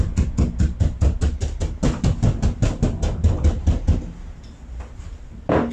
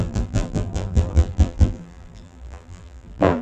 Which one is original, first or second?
first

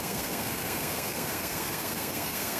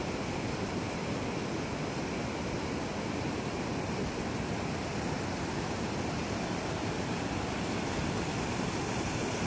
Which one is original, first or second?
second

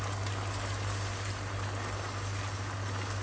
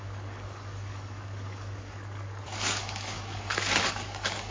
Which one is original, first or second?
first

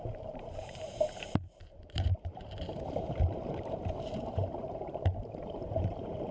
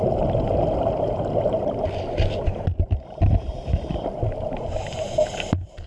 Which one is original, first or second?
second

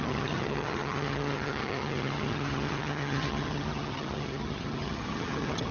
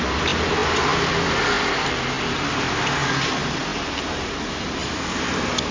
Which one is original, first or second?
second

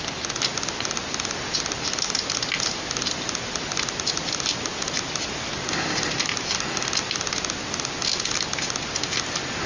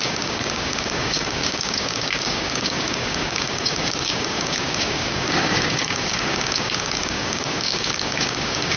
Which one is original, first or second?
first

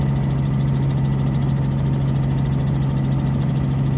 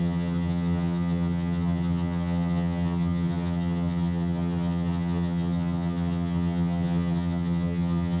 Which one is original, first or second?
first